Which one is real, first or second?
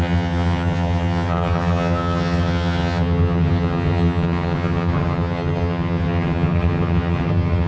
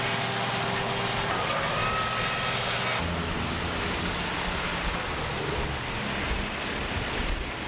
second